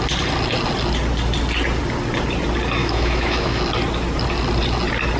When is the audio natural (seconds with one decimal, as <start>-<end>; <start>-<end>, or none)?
0.0-2.8; 3.6-5.2